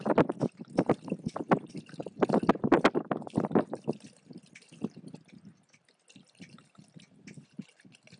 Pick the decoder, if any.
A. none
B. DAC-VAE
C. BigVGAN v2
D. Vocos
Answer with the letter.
A